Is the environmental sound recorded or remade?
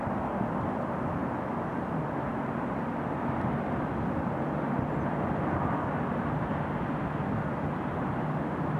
recorded